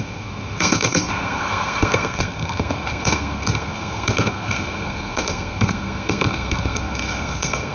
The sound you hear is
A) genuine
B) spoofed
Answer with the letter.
B